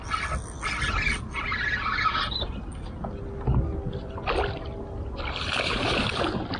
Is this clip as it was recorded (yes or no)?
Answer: yes